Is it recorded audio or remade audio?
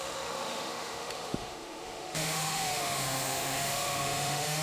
remade